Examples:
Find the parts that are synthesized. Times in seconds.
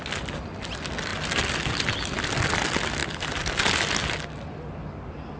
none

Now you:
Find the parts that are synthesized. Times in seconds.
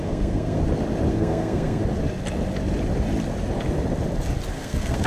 0.0-0.6 (codec, SNAC); 1.1-1.8; 4.5-5.1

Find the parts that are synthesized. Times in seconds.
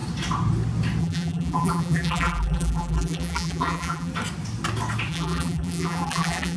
1.0-4.1 (vocoder, BigVGAN v2); 5.1-6.6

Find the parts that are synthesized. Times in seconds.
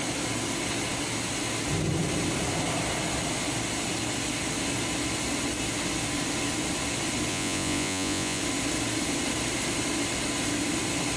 7.3-8.4 (vocoder, Vocos)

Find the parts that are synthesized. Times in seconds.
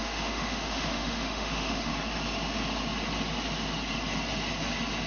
0.0-1.9 (autoencoder, DAC-VAE)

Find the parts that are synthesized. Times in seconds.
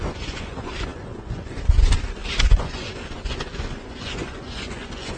0.0-5.2 (vocoder, Vocos)